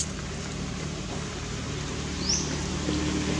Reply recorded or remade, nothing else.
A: recorded